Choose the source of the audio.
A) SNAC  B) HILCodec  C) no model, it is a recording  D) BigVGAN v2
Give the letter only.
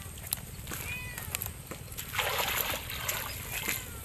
C